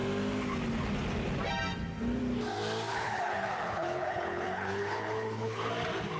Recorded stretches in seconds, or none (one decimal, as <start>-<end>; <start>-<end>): 0.0-2.9; 5.7-6.2